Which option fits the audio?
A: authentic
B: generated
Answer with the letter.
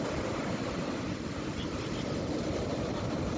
A